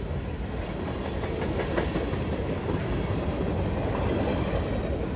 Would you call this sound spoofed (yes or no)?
no